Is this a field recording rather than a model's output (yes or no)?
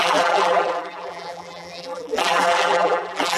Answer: no